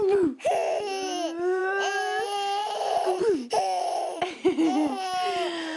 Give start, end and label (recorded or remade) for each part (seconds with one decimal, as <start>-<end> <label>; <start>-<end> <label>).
0.0-2.6 recorded; 2.6-4.2 remade; 4.2-5.8 recorded